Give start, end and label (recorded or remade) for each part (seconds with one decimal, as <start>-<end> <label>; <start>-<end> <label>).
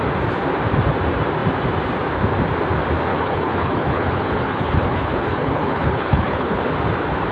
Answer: 0.0-3.1 recorded; 3.1-6.6 remade; 6.6-7.3 recorded